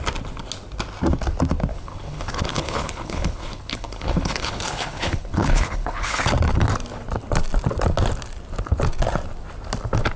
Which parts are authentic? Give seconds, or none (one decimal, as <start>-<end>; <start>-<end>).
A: 0.0-1.7; 6.2-10.2